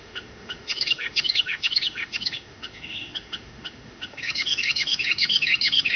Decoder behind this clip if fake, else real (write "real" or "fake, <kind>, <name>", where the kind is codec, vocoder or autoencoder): fake, autoencoder, DAC-VAE